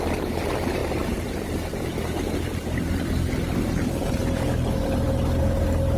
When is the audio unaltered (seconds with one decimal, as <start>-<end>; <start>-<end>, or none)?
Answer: 0.0-0.8; 1.4-6.0

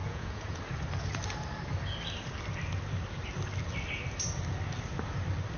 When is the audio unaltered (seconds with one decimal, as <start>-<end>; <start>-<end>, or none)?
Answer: 0.6-5.6

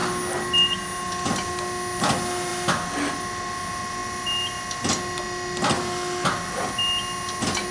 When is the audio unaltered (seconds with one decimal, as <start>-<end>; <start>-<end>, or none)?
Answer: 0.0-7.7

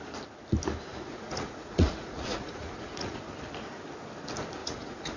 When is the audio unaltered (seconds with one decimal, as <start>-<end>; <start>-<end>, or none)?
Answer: 0.0-0.9; 3.4-4.6